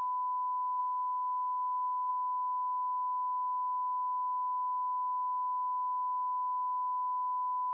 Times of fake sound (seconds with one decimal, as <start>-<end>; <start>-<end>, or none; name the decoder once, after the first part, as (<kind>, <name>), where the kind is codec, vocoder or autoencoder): 0.8-2.1 (codec, DAC)

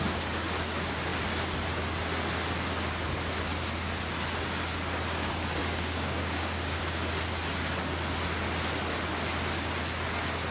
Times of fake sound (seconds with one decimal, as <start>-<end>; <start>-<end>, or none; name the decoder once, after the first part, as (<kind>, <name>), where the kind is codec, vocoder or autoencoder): 5.6-6.8 (codec, DAC)